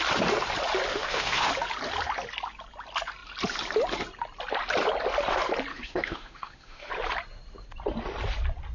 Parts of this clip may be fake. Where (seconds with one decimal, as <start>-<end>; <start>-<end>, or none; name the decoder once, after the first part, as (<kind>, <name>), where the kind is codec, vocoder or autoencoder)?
0.9-1.5 (autoencoder, DAC-VAE); 5.7-6.9